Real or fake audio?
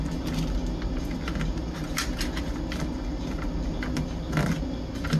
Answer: real